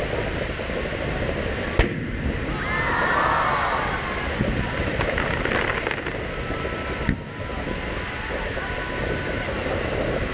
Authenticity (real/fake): real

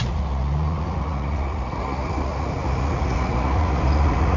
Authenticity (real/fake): fake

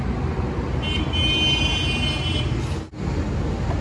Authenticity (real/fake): real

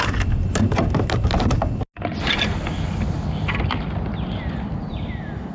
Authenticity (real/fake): real